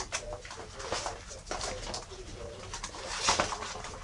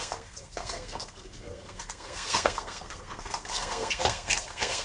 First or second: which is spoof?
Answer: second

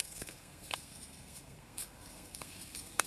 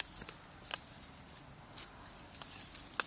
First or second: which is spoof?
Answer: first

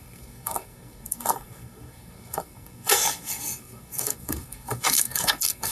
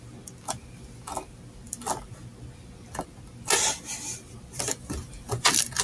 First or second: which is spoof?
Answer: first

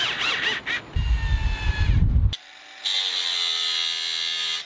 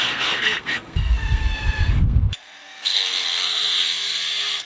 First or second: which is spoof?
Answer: second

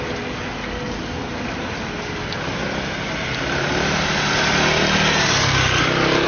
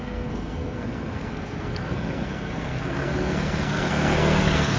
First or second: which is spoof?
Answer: second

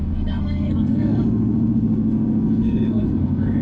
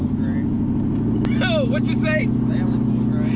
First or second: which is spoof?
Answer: first